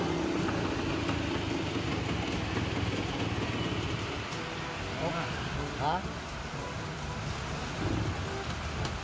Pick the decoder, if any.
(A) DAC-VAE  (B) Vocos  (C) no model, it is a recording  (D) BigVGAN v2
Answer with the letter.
C